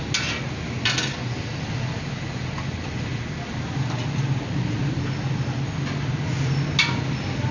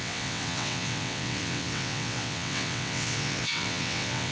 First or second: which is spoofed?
second